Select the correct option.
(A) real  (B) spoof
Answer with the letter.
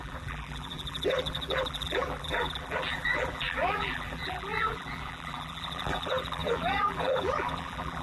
B